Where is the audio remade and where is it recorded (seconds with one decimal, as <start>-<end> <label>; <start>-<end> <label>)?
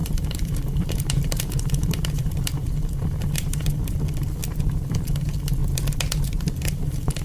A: 0.0-4.4 remade; 4.4-4.9 recorded; 4.9-5.6 remade; 5.6-6.6 recorded; 6.6-7.2 remade